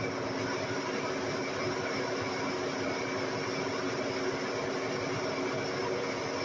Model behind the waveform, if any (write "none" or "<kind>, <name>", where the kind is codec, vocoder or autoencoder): none